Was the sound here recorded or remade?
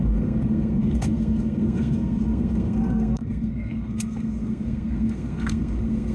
remade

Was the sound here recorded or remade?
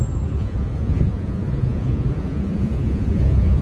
remade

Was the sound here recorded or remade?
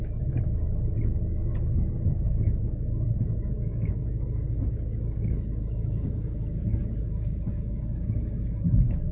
remade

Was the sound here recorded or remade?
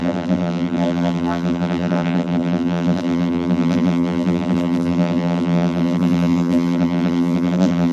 remade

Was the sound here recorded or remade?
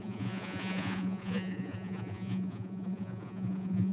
remade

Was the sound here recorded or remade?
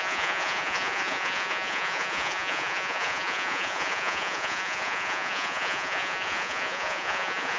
remade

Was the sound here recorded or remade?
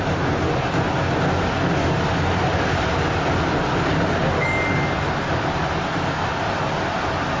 recorded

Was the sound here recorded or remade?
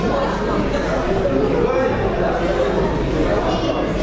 recorded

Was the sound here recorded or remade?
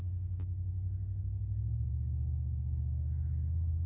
recorded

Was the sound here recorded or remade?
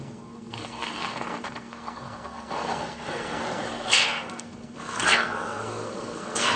remade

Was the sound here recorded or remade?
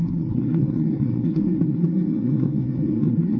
remade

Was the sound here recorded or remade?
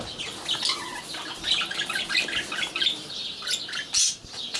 recorded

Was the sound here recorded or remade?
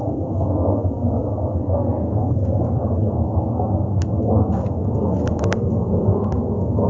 remade